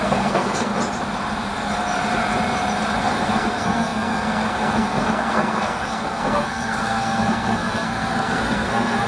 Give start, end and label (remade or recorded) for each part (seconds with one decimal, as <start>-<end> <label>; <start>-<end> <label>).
0.0-0.7 remade; 0.7-3.0 recorded; 3.0-9.1 remade